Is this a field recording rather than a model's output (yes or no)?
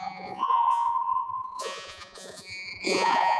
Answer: no